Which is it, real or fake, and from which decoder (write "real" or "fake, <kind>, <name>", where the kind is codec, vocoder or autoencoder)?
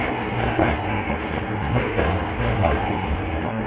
fake, codec, SNAC